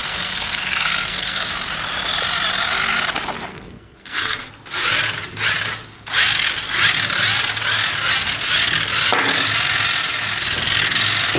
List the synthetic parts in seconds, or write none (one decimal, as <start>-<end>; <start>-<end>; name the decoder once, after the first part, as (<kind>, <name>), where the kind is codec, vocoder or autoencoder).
0.0-1.5 (codec, SNAC); 3.5-4.5